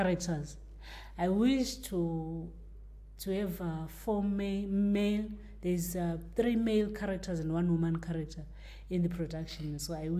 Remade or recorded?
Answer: recorded